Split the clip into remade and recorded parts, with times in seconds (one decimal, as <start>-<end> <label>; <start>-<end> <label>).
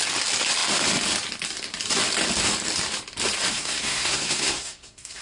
0.0-3.5 recorded; 3.5-5.2 remade